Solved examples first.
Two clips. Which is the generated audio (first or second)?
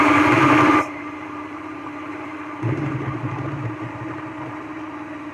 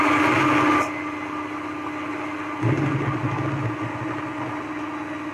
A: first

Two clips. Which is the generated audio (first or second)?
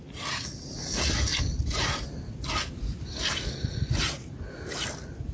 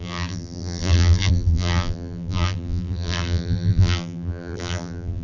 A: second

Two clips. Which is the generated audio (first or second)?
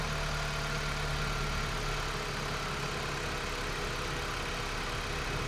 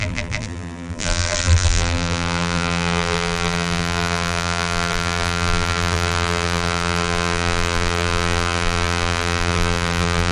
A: second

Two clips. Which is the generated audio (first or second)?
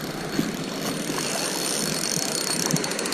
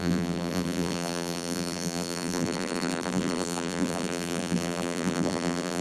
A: second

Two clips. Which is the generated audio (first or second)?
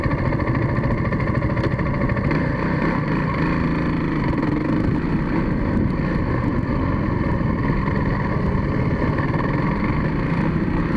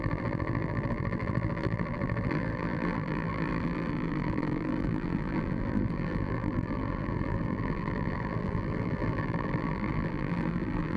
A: second